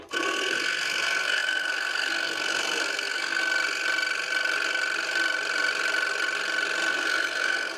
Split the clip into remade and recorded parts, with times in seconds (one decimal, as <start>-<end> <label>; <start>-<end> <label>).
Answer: 0.0-3.4 remade; 3.4-6.9 recorded; 6.9-7.8 remade